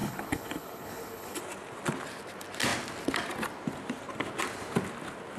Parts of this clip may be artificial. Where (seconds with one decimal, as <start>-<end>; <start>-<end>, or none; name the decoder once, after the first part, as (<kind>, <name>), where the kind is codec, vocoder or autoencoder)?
0.0-1.4 (codec, HILCodec)